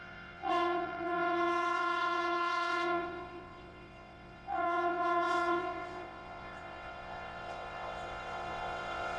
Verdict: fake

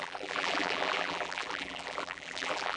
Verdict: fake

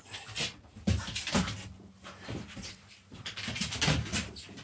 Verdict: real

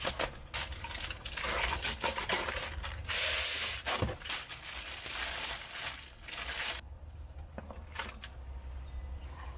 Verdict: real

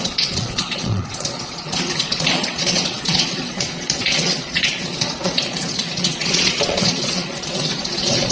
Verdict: fake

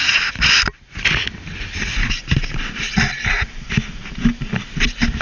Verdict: real